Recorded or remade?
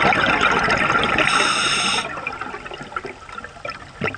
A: recorded